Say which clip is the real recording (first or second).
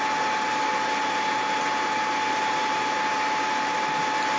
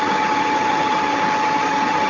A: first